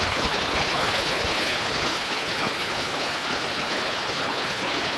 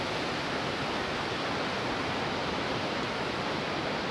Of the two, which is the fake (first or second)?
first